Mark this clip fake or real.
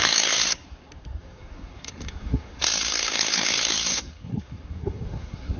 fake